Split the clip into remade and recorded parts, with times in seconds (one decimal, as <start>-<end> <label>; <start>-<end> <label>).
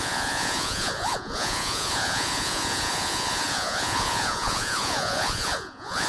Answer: 0.0-6.1 remade